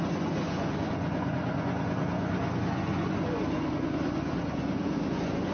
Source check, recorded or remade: remade